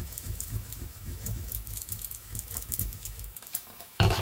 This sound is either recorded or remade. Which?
remade